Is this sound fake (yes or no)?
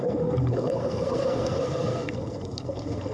yes